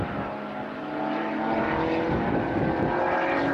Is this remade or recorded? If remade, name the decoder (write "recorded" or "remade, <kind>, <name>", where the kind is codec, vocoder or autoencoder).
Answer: recorded